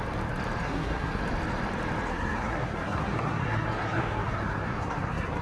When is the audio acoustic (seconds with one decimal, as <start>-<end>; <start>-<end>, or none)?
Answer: 0.0-0.6; 1.2-2.1